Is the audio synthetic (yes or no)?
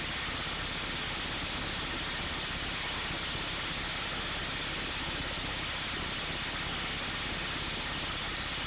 no